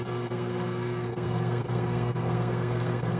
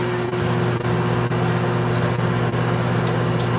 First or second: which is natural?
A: second